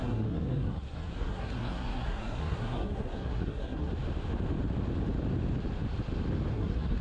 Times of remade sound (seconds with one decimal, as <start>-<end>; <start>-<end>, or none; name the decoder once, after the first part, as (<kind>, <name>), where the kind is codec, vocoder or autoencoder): 0.0-3.9 (codec, SNAC); 6.5-7.0